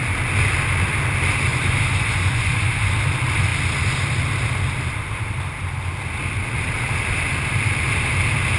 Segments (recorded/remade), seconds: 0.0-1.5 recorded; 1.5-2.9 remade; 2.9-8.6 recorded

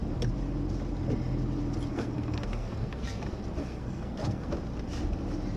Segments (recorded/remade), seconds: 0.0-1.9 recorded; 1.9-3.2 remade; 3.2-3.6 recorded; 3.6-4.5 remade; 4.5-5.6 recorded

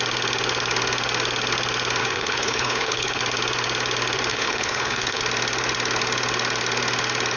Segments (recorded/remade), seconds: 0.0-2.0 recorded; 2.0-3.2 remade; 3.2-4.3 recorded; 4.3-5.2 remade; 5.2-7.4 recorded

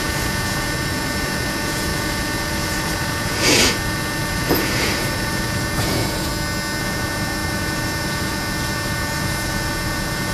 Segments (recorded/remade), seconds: 0.0-6.3 remade; 6.3-6.8 recorded; 6.8-10.3 remade

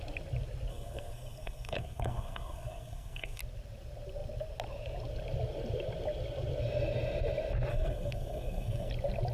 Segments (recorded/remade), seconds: 0.0-0.7 recorded; 0.7-3.4 remade; 3.4-7.7 recorded; 7.7-8.9 remade; 8.9-9.3 recorded